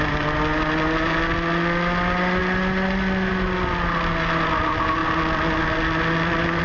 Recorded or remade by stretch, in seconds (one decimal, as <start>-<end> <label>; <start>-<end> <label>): 0.0-6.6 recorded